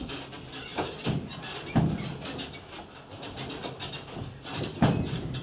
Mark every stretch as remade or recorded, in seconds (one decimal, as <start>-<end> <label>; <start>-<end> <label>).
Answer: 0.0-0.7 remade; 0.7-3.9 recorded; 3.9-5.4 remade